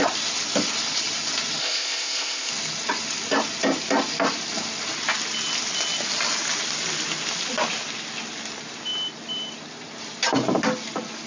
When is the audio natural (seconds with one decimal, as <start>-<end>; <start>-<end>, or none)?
0.0-1.6; 2.5-11.3

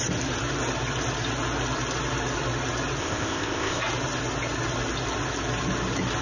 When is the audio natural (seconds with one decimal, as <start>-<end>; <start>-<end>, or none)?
0.0-3.0; 3.8-6.2

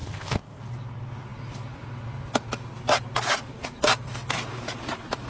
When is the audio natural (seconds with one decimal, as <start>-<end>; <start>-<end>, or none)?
0.6-5.3

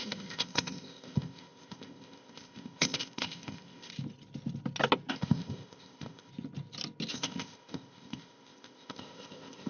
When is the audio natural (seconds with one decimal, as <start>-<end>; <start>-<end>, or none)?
3.9-5.1; 6.3-7.1

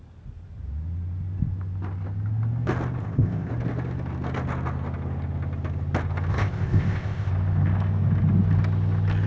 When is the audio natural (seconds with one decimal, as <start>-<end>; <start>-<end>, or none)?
0.0-3.0; 3.5-6.3; 7.3-9.3